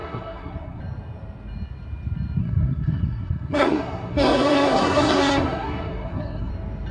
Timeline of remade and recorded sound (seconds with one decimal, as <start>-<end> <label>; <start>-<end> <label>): 0.0-0.8 remade; 0.8-2.4 recorded; 2.4-6.5 remade; 6.5-6.9 recorded